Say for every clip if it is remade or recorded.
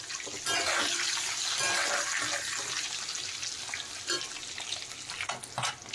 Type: recorded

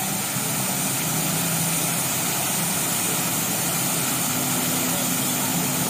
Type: recorded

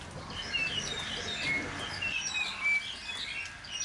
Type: recorded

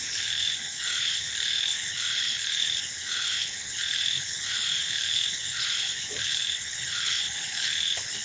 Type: remade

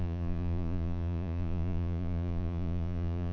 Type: remade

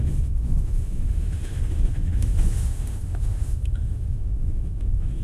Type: remade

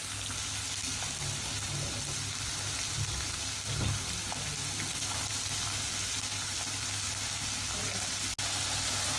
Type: recorded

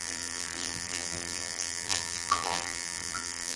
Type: remade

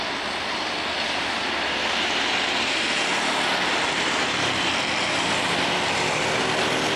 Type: remade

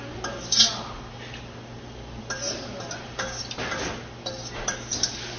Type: recorded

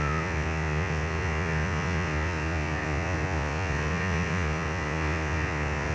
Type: remade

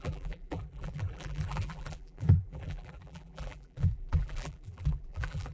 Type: remade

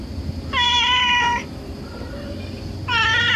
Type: remade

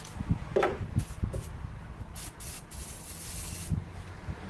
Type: recorded